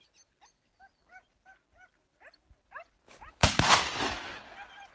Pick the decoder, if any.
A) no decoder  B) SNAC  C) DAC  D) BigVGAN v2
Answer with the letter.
A